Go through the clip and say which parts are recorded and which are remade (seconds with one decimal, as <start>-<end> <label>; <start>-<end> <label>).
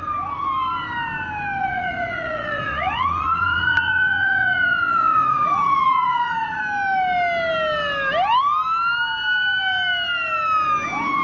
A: 0.0-1.6 recorded; 1.6-6.6 remade; 6.6-11.2 recorded